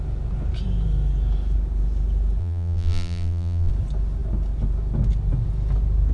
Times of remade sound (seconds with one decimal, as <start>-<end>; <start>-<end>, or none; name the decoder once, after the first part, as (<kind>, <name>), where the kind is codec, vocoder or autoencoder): 2.4-3.7 (vocoder, BigVGAN v2)